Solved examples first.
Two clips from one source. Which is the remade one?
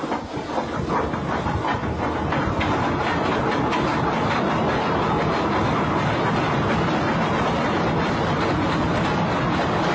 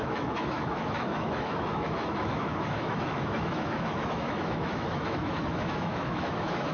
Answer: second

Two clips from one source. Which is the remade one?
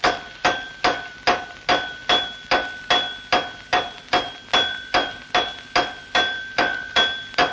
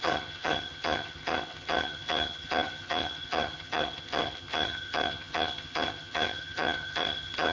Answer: second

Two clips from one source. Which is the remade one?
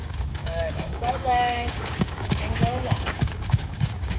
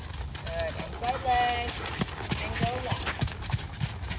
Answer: first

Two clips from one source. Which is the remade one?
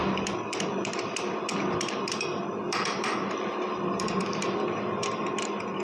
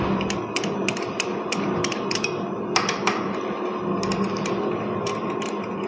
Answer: first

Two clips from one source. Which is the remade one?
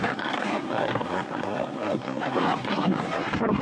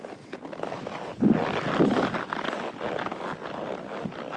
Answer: first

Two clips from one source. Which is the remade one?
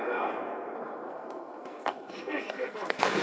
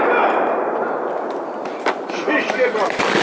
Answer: first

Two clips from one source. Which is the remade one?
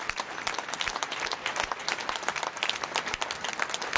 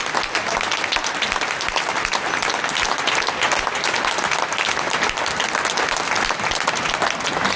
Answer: first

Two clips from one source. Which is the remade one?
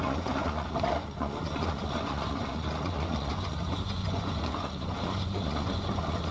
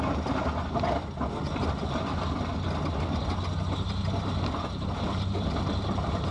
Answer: first